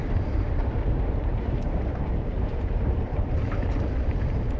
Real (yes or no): no